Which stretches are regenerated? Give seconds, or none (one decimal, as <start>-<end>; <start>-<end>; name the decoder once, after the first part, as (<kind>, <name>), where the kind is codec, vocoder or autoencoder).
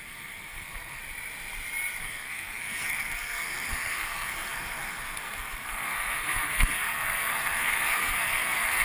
0.0-1.0 (codec, SNAC); 2.0-8.8